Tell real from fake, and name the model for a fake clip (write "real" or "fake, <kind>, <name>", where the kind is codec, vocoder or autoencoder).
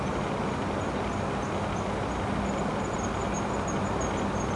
real